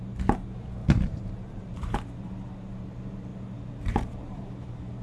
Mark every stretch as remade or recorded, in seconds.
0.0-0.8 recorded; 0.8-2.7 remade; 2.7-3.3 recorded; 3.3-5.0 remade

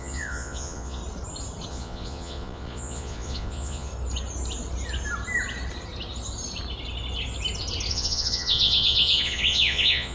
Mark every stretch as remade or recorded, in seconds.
0.0-1.0 remade; 1.0-1.7 recorded; 1.7-3.9 remade; 3.9-7.9 recorded; 7.9-10.1 remade

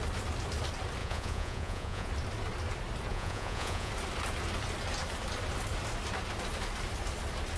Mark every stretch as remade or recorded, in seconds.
0.0-1.0 recorded; 1.0-2.1 remade; 2.1-3.1 recorded; 3.1-3.9 remade; 3.9-7.6 recorded

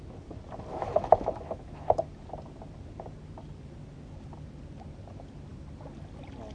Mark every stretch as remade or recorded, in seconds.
0.0-0.7 recorded; 0.7-2.0 remade; 2.0-6.5 recorded